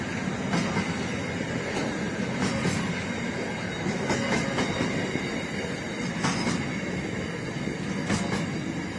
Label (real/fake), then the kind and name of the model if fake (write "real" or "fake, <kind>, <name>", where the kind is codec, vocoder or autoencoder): real